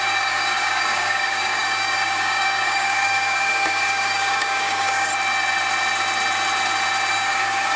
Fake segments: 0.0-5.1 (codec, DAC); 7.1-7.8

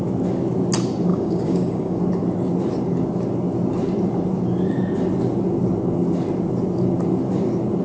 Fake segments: 1.1-2.0 (codec, DAC)

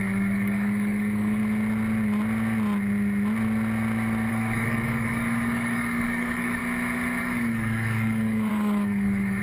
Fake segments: 0.0-1.4 (codec, DAC); 4.3-6.6; 7.2-9.4